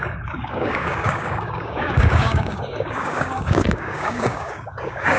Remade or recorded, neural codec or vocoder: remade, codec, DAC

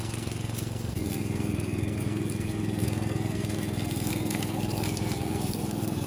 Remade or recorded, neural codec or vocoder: remade, codec, SNAC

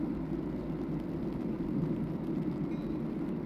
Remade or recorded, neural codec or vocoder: recorded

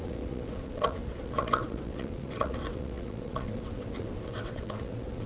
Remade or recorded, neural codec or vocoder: remade, vocoder, WaveNeXt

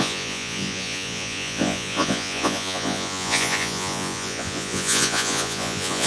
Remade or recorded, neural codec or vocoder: remade, vocoder, Vocos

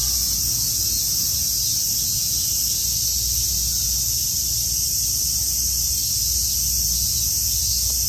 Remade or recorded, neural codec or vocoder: recorded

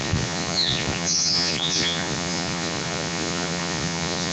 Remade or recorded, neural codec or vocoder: remade, vocoder, Vocos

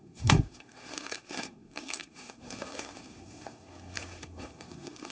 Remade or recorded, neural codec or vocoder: remade, codec, SNAC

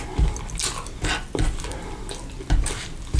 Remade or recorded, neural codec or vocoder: recorded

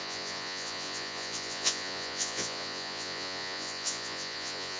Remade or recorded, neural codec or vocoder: remade, vocoder, Vocos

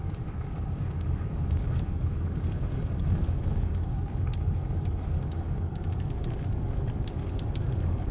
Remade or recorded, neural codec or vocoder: remade, codec, DAC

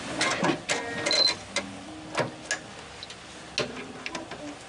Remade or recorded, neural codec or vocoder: recorded